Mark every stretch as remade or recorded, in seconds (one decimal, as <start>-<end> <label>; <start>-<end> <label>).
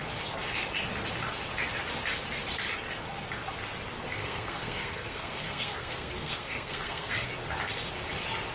0.0-4.2 recorded; 4.2-7.3 remade; 7.3-8.5 recorded